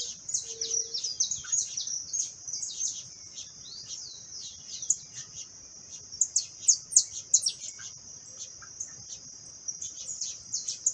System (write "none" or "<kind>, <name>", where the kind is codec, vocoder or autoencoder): none